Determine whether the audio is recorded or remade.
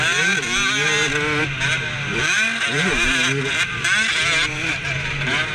recorded